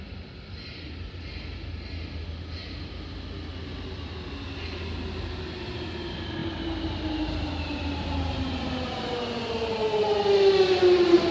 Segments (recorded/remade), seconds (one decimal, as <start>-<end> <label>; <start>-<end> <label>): 0.0-11.3 recorded